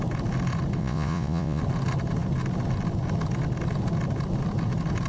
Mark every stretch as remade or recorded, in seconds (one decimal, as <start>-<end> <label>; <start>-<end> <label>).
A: 0.0-0.8 recorded; 0.8-1.6 remade; 1.6-5.1 recorded